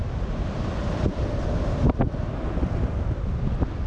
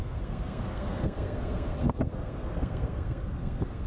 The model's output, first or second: second